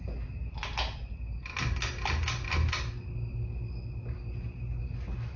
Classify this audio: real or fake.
real